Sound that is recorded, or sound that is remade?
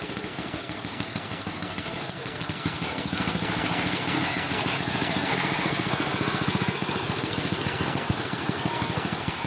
remade